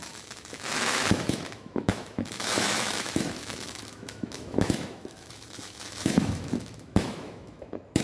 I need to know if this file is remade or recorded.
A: remade